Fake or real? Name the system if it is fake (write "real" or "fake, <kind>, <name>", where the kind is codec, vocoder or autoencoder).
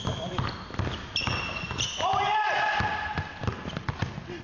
real